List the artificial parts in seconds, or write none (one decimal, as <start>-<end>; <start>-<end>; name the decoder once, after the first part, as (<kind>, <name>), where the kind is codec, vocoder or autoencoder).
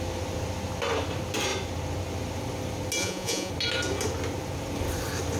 3.0-3.5 (vocoder, Vocos)